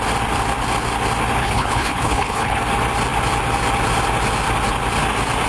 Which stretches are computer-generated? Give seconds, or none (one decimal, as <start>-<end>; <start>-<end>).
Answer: 1.4-2.6